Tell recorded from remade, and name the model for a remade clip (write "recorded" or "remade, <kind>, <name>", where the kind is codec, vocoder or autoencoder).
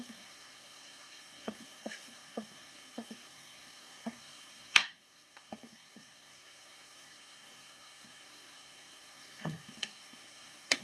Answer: remade, codec, SNAC